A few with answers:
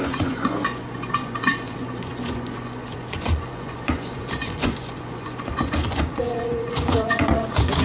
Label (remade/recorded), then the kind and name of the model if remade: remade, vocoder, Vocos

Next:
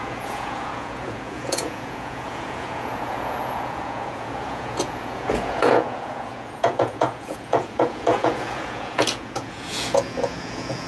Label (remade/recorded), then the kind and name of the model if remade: remade, vocoder, Vocos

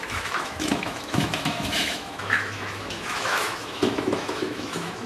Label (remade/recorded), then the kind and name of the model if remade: remade, autoencoder, DAC-VAE